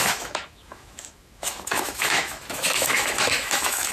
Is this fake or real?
fake